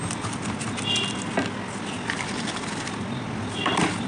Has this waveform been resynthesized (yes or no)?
no